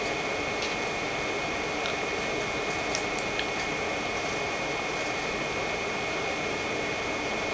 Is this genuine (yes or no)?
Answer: yes